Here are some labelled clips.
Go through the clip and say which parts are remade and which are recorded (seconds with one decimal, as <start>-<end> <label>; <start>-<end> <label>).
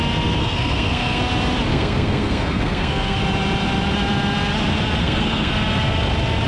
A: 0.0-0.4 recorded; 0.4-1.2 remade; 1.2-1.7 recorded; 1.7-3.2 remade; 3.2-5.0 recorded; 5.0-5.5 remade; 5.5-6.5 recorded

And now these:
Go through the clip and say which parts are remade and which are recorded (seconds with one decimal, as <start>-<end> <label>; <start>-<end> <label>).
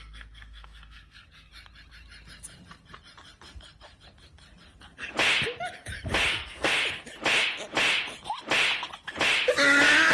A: 0.0-1.5 remade; 1.5-6.3 recorded; 6.3-6.7 remade; 6.7-10.1 recorded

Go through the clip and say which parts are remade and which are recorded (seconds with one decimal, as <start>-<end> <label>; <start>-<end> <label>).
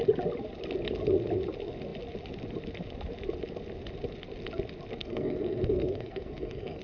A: 0.0-5.0 recorded; 5.0-6.8 remade